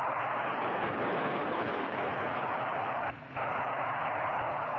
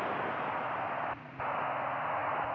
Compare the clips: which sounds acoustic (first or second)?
second